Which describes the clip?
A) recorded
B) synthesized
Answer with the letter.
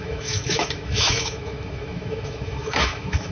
B